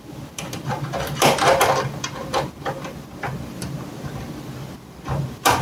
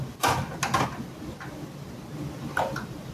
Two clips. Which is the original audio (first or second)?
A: second